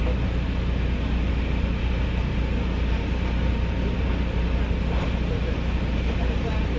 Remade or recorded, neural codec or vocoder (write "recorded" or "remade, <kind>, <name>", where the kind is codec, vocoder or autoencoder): recorded